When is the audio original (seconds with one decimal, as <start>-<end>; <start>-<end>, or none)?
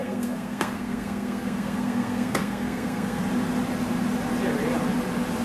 3.2-5.4